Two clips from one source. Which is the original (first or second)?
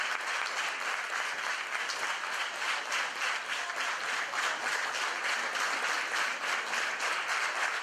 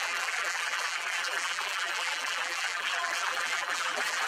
first